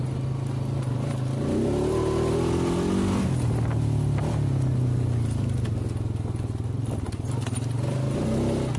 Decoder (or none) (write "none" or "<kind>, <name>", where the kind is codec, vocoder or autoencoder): none